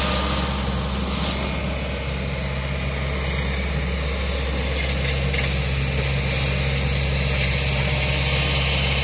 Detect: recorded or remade recorded